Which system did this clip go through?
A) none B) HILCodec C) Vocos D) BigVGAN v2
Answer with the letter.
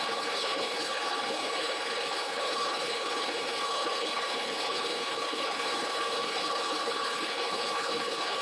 B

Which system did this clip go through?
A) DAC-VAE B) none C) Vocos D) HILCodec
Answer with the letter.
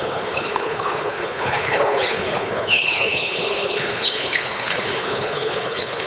D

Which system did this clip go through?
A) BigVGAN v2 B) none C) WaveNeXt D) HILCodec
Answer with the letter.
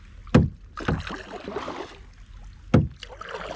B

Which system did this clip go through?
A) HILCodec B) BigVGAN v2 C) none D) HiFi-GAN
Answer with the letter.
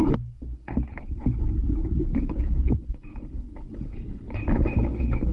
A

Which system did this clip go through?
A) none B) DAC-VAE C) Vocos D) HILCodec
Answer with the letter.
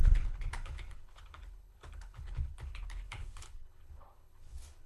D